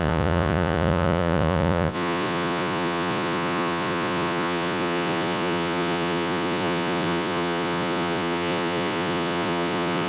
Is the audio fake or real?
fake